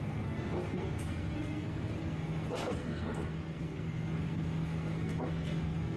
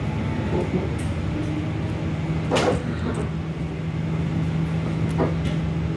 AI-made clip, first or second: first